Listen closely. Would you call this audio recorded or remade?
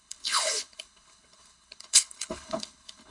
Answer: remade